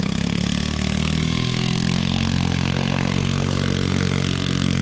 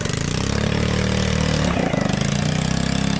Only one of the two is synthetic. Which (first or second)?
first